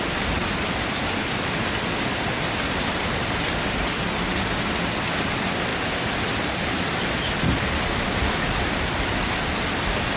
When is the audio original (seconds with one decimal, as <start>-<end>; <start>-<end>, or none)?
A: 0.0-10.2

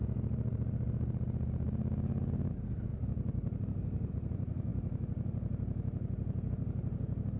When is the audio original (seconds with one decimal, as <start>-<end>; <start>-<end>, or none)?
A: 0.0-7.4

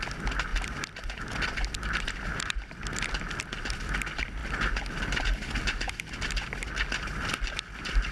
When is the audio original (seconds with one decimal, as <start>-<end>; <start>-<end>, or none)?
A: 0.0-8.1